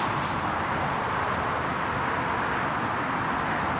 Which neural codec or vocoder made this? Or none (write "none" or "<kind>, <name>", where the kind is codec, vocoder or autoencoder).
none